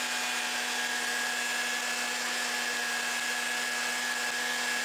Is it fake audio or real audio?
real